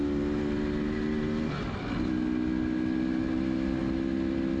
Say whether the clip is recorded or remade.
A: recorded